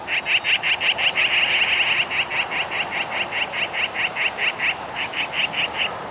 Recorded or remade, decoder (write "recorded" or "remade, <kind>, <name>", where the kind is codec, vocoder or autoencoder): recorded